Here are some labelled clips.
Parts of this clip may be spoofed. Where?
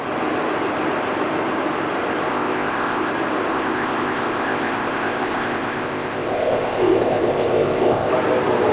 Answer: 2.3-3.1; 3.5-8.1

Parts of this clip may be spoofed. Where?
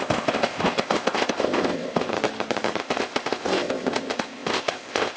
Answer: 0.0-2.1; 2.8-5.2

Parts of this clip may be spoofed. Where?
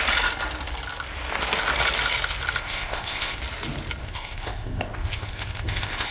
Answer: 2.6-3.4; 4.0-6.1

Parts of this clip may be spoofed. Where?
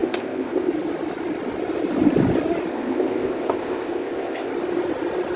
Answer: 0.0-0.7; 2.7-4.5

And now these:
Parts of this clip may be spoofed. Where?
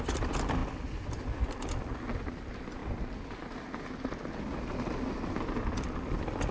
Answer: none